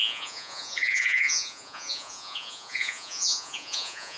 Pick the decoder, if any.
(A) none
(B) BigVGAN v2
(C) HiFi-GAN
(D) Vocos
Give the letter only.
D